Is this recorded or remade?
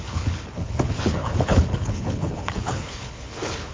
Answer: remade